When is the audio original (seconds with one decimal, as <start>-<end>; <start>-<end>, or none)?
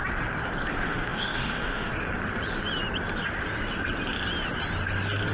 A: 0.0-0.7; 1.9-5.3